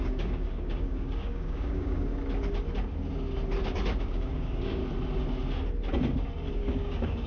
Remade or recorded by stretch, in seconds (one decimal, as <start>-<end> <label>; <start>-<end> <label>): 0.0-2.1 remade; 2.1-4.0 recorded; 4.0-4.8 remade; 4.8-6.5 recorded; 6.5-7.3 remade